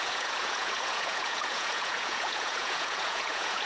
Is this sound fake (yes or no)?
yes